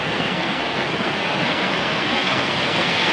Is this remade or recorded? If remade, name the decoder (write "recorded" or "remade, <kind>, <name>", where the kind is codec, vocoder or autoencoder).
remade, codec, SNAC